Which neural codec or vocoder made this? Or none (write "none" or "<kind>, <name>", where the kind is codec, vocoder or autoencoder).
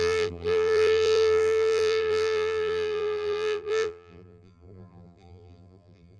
vocoder, BigVGAN v2